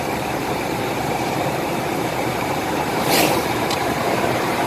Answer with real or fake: fake